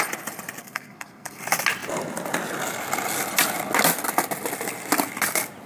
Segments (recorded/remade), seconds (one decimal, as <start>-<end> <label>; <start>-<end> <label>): 0.0-0.6 recorded; 0.6-1.4 remade; 1.4-5.7 recorded